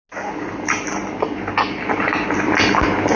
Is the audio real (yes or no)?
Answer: yes